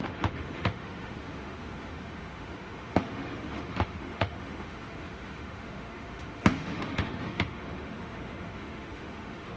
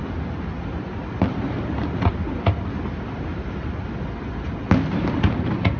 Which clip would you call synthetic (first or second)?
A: first